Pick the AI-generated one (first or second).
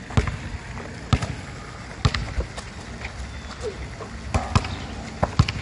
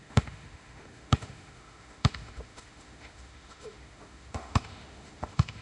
second